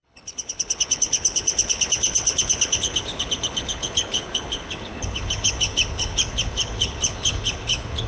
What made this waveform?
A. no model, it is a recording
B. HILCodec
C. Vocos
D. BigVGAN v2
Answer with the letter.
B